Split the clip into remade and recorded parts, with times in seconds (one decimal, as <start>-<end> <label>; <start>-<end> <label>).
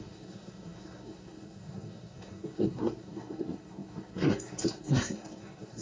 0.0-5.8 remade